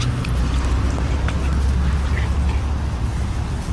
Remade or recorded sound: recorded